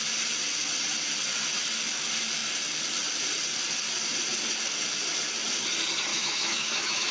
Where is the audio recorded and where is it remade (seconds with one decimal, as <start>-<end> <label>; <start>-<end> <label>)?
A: 0.0-6.1 recorded; 6.1-7.1 remade